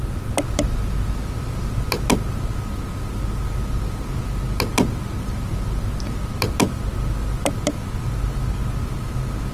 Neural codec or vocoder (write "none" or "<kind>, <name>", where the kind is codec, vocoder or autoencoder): none